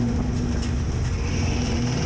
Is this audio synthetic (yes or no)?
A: no